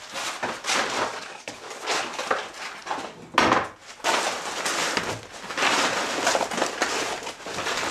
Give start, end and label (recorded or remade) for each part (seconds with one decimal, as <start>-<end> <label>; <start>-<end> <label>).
0.0-1.1 recorded; 1.1-1.8 remade; 1.8-7.9 recorded